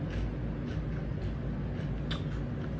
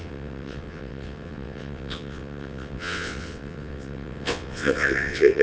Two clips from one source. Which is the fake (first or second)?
second